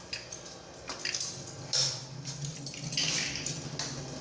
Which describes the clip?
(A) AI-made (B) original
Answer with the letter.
B